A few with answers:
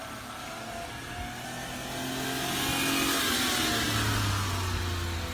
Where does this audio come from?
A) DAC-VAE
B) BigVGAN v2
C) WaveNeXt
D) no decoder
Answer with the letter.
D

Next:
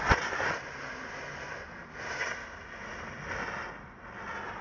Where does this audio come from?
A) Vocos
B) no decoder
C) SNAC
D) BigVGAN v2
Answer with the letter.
B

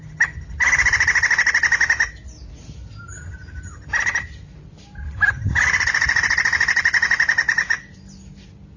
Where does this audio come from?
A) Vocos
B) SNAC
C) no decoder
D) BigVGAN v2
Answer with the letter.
C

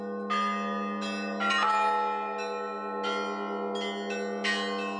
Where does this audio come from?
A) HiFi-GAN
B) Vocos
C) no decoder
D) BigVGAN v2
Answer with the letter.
C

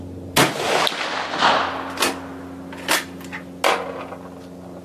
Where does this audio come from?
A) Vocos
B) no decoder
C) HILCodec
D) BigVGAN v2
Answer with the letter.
B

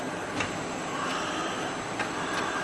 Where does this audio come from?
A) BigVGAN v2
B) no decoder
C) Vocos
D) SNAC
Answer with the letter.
B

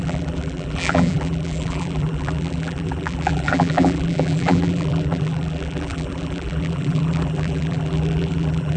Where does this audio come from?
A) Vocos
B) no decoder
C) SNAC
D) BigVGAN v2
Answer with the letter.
D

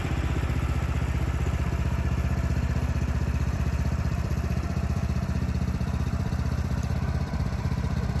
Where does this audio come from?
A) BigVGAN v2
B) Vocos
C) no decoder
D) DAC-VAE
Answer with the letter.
A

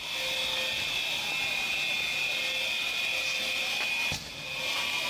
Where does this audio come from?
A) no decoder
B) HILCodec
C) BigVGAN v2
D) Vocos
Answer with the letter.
A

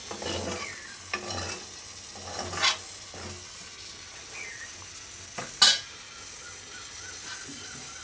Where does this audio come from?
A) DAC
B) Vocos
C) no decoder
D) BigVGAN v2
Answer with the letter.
C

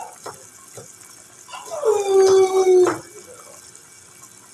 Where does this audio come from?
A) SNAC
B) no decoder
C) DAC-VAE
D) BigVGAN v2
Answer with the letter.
B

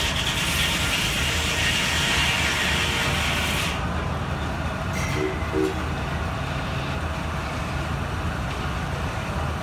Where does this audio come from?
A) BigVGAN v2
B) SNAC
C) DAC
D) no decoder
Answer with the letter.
D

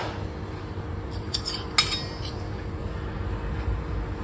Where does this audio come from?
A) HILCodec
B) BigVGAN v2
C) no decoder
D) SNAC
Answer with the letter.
C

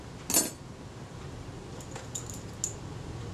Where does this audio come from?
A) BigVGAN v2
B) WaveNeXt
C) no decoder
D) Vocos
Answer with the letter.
C